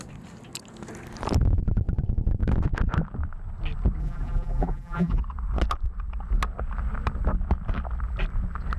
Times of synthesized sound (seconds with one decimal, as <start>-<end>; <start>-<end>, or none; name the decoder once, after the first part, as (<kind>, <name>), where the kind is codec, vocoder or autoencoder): 4.0-5.2 (vocoder, BigVGAN v2)